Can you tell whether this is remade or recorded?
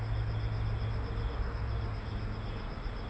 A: recorded